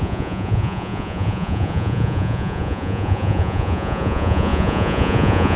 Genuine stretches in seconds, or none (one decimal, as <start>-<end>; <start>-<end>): none